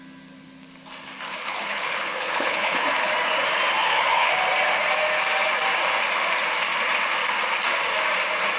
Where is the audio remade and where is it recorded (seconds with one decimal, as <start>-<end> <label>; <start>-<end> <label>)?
0.0-1.4 recorded; 1.4-3.1 remade; 3.1-3.8 recorded; 3.8-4.3 remade; 4.3-8.6 recorded